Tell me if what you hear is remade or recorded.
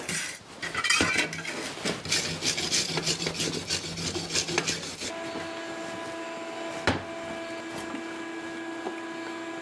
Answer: recorded